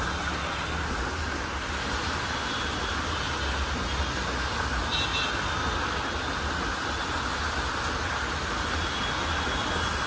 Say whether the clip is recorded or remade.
recorded